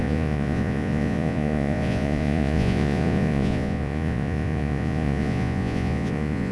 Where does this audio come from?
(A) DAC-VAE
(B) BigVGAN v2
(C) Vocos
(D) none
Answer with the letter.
C